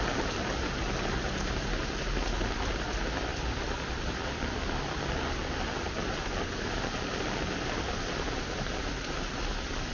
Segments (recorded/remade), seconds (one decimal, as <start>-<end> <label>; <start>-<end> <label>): 0.0-3.3 recorded; 3.3-5.1 remade; 5.1-9.9 recorded